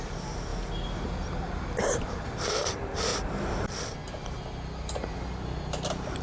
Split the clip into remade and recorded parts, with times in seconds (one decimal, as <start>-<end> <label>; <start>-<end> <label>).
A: 0.0-0.5 remade; 0.5-1.8 recorded; 1.8-3.1 remade; 3.1-3.6 recorded; 3.6-4.0 remade; 4.0-5.1 recorded; 5.1-6.2 remade